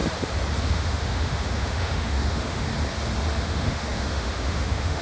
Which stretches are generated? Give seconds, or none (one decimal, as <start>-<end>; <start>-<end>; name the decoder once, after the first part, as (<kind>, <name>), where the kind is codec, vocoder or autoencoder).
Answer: 0.7-2.7 (autoencoder, DAC-VAE); 3.4-5.0